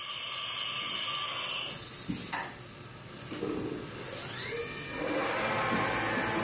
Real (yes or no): yes